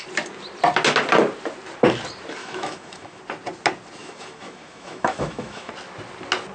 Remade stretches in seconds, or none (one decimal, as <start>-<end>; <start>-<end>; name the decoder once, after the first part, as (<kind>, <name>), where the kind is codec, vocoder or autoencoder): 2.4-3.2 (autoencoder, DAC-VAE); 4.0-5.7